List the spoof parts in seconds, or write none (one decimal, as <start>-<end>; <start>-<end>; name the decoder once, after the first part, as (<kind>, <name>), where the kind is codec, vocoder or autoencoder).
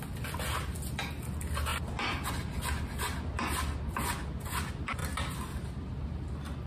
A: none